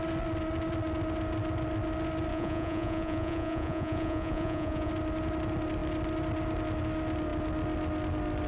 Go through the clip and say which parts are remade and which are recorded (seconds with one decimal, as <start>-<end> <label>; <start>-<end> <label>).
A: 0.0-2.3 recorded; 2.3-4.9 remade; 4.9-8.5 recorded